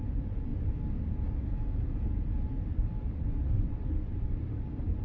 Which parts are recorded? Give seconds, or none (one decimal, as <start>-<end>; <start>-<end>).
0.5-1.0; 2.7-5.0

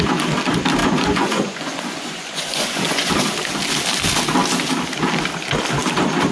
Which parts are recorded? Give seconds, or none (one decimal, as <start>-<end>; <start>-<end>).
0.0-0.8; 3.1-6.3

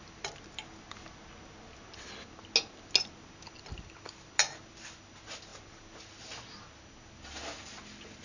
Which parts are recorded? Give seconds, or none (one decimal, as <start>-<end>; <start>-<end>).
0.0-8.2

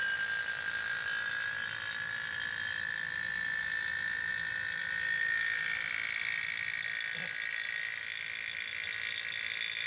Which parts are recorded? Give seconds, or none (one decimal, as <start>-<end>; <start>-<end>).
0.0-9.9